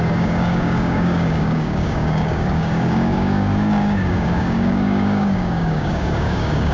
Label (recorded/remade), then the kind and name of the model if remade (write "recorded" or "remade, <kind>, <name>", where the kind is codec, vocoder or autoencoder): remade, codec, DAC